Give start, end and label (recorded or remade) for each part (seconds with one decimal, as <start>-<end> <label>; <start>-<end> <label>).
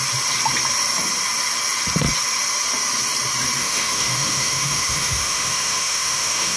0.0-3.6 recorded; 3.6-6.6 remade